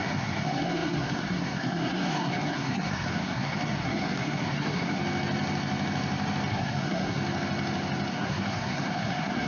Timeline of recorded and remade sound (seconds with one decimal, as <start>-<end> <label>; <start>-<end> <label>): 0.0-5.0 remade; 5.0-6.5 recorded; 6.5-7.2 remade; 7.2-8.1 recorded; 8.1-9.5 remade